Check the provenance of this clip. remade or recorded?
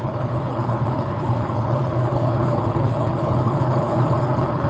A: remade